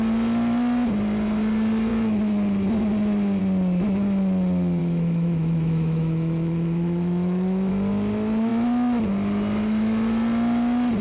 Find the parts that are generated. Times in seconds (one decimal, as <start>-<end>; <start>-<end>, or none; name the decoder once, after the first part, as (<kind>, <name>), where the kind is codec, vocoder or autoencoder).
4.8-7.7 (autoencoder, DAC-VAE)